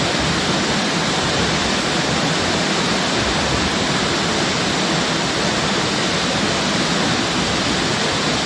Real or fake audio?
real